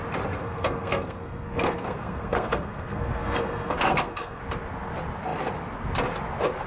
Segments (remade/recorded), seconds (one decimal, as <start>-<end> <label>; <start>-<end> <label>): 0.0-0.4 recorded; 0.4-4.4 remade; 4.4-6.7 recorded